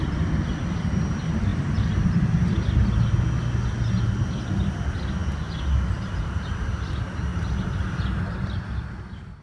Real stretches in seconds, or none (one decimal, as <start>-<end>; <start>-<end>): 0.0-9.4